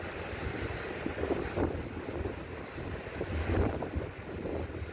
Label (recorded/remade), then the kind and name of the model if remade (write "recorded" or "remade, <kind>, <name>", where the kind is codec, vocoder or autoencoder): recorded